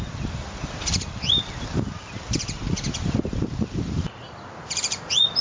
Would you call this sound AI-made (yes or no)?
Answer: no